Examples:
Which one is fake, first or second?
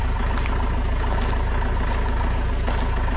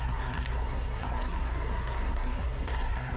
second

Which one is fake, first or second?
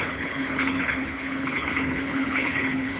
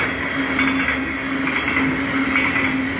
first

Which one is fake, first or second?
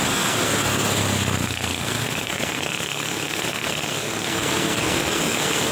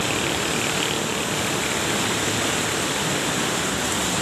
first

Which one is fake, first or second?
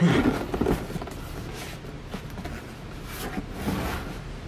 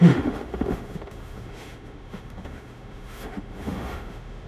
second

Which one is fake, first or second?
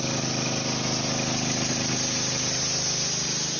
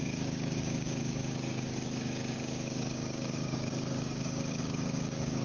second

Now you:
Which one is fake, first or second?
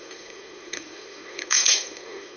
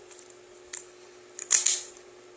first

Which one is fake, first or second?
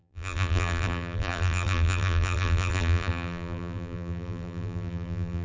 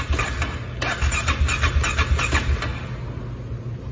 first